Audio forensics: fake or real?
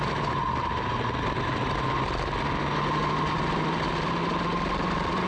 real